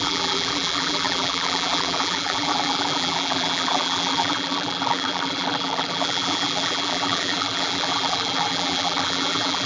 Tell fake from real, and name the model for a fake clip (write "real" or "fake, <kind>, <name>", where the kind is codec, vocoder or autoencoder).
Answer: fake, vocoder, BigVGAN v2